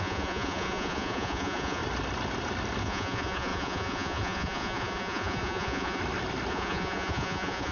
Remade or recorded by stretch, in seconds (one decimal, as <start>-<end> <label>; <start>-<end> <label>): 0.0-1.8 remade; 1.8-2.8 recorded; 2.8-6.0 remade; 6.0-6.5 recorded; 6.5-7.7 remade